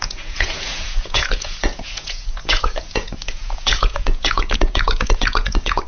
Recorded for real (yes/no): no